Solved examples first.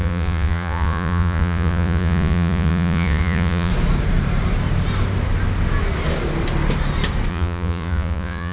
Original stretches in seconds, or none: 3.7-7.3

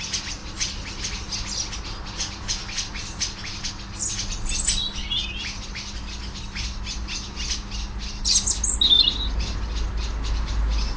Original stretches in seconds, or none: 0.0-11.0

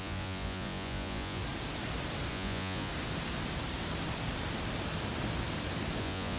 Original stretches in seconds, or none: 1.4-2.3; 2.9-6.0

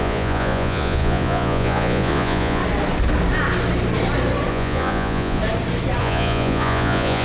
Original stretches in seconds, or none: 2.6-4.5; 5.4-6.0

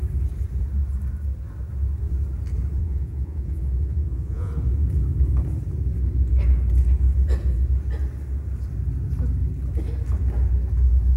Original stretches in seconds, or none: 0.0-2.8; 4.5-11.2

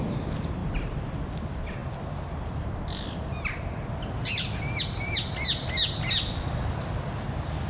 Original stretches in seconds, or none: 0.0-7.7